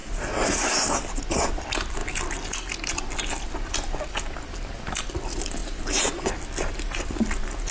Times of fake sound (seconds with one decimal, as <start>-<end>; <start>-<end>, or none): none